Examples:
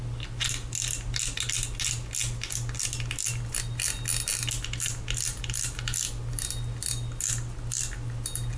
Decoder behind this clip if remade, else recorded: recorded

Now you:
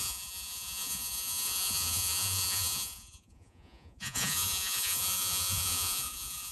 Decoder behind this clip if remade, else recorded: remade, vocoder, Vocos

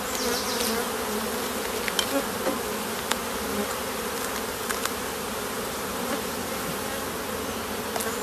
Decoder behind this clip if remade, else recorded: recorded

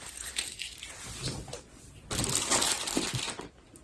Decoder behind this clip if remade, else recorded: recorded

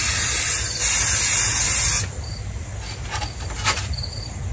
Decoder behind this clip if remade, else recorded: recorded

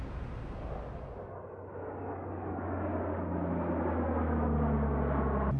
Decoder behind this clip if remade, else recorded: recorded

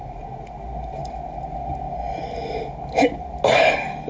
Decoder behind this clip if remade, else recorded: recorded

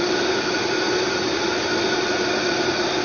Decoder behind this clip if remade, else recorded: recorded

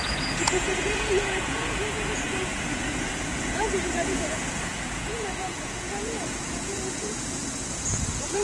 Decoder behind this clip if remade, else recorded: remade, vocoder, Vocos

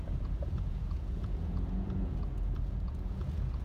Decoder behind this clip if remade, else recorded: remade, vocoder, Vocos